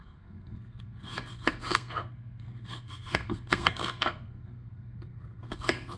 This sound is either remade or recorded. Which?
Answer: remade